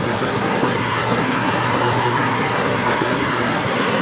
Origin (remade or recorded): remade